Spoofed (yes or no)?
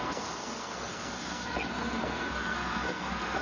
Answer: yes